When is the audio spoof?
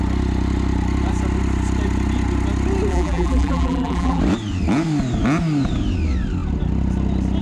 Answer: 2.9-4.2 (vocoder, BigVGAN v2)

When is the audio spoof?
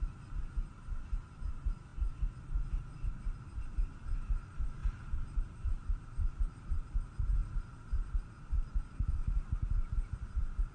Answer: 4.8-6.3 (vocoder, BigVGAN v2); 7.4-8.1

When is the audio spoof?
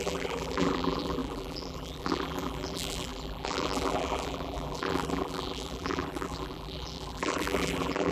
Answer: 0.0-8.1 (vocoder, BigVGAN v2)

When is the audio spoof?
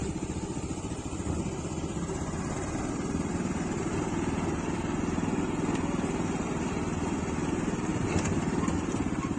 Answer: 0.0-5.0 (vocoder, BigVGAN v2); 7.9-8.8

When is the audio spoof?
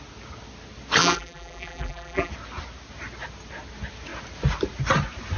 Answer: 1.0-2.3 (vocoder, BigVGAN v2)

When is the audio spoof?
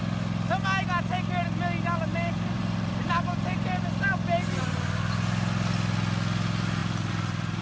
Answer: 2.1-3.7 (vocoder, BigVGAN v2); 6.8-7.6